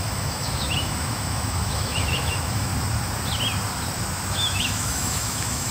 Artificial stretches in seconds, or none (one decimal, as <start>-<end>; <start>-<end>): 0.0-2.7; 4.3-5.7